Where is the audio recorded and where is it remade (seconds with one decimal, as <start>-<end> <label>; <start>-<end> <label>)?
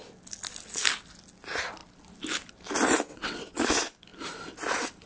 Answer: 0.0-3.1 recorded; 3.1-3.6 remade; 3.6-5.1 recorded